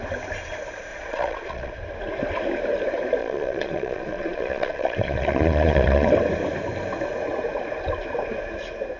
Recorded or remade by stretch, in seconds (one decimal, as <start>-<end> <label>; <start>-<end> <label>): 0.0-0.9 recorded; 0.9-1.7 remade; 1.7-3.2 recorded; 3.2-6.1 remade; 6.1-9.0 recorded